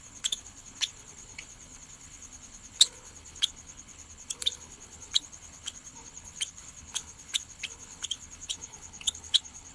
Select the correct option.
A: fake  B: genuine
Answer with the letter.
A